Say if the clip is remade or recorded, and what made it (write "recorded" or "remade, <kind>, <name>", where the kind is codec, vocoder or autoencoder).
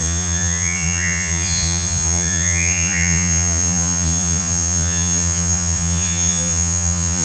remade, vocoder, Vocos